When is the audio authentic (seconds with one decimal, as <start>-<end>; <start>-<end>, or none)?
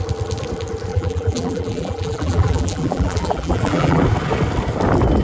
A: 0.0-0.9; 4.0-5.2